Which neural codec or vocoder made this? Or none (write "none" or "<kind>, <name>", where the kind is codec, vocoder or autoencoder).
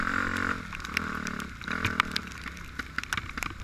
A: none